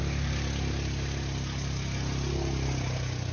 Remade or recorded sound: recorded